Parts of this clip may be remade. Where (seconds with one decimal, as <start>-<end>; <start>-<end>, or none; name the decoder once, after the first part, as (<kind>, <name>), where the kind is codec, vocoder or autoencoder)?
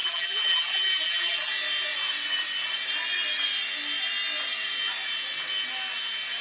0.0-1.5 (vocoder, BigVGAN v2)